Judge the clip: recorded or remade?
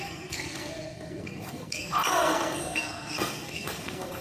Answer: remade